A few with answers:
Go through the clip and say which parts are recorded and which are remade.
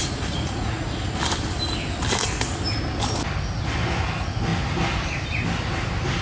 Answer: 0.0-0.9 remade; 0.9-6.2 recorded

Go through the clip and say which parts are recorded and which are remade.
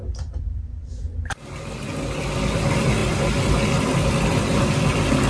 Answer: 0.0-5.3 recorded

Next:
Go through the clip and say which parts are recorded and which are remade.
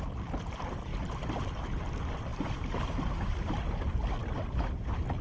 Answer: 0.0-5.2 recorded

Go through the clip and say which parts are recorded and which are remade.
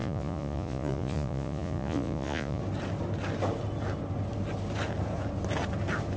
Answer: 0.0-2.6 remade; 2.6-6.2 recorded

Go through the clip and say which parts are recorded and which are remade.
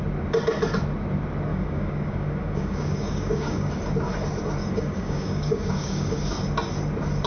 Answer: 0.0-1.5 recorded; 1.5-3.7 remade; 3.7-4.6 recorded; 4.6-6.3 remade; 6.3-7.3 recorded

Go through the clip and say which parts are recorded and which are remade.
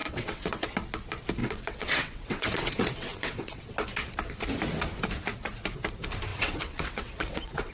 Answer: 0.0-0.7 remade; 0.7-1.4 recorded; 1.4-3.6 remade; 3.6-6.3 recorded; 6.3-7.7 remade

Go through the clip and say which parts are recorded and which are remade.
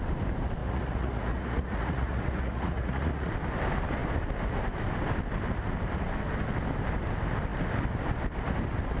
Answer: 0.0-0.6 recorded; 0.6-3.3 remade; 3.3-9.0 recorded